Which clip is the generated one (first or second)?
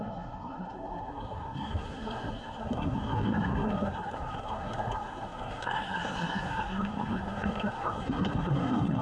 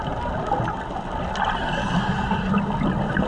first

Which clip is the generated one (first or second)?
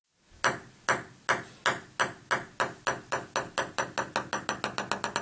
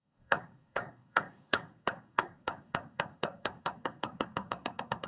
second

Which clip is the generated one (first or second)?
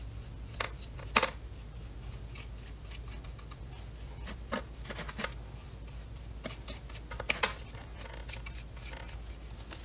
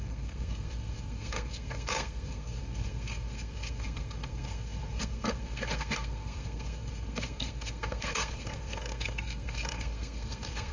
second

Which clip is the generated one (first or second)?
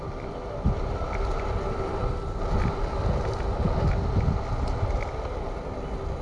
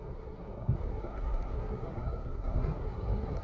second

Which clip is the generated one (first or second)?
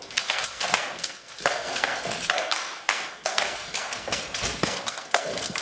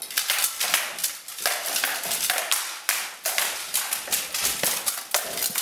first